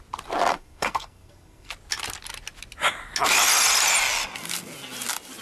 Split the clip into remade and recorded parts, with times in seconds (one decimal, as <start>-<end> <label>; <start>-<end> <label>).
0.0-0.5 recorded; 0.5-1.7 remade; 1.7-5.4 recorded